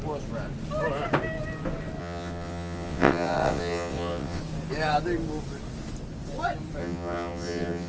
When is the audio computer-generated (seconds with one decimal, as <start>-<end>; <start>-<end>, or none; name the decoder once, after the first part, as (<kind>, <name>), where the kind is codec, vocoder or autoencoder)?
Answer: 2.0-4.4 (vocoder, WaveNeXt); 6.8-7.9